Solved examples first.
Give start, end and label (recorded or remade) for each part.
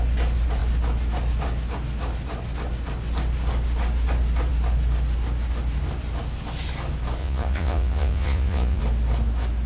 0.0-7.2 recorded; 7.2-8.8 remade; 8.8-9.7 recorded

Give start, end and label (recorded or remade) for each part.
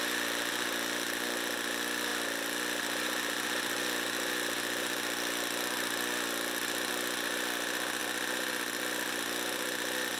0.0-10.2 recorded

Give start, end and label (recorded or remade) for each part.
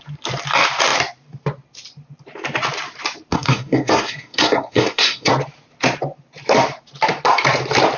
0.0-3.3 recorded; 3.3-5.3 remade; 5.3-8.0 recorded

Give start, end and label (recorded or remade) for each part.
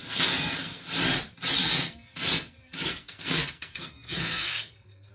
0.0-0.8 remade; 0.8-1.6 recorded; 1.6-5.1 remade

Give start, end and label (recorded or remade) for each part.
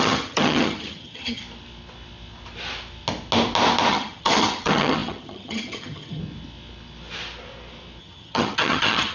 0.0-1.4 remade; 1.4-3.9 recorded; 3.9-6.2 remade; 6.2-8.0 recorded; 8.0-9.1 remade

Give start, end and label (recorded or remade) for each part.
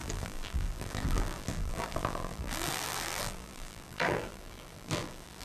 0.0-5.4 remade